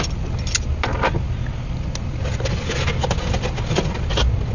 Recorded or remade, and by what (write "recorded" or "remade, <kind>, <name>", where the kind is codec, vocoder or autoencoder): recorded